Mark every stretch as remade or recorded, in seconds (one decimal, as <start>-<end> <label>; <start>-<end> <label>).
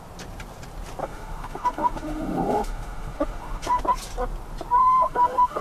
0.0-1.0 recorded; 1.0-3.8 remade; 3.8-4.8 recorded; 4.8-5.6 remade